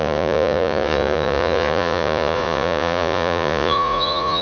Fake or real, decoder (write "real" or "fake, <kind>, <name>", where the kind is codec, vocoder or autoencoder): fake, vocoder, Vocos